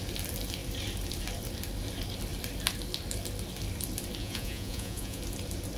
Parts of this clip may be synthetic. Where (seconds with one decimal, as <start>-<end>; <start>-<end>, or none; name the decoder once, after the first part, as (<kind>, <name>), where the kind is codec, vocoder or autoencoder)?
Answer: 4.2-5.2 (vocoder, Vocos)